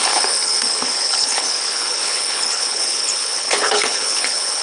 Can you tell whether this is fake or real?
fake